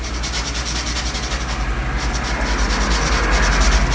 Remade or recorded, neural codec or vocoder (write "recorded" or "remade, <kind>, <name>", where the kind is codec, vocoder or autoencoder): recorded